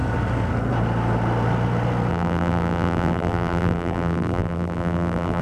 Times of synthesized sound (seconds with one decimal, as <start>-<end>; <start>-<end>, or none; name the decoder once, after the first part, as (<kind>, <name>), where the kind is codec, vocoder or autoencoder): 2.1-5.4 (vocoder, BigVGAN v2)